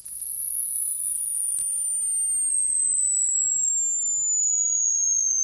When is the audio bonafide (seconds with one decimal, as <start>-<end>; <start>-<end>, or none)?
1.6-2.5; 3.7-4.4